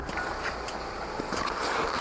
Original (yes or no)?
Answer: yes